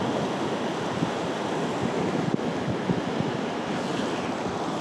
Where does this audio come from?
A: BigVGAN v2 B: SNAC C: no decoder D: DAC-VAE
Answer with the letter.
C